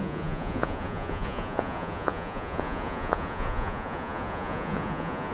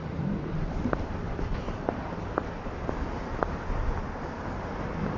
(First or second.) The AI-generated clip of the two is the first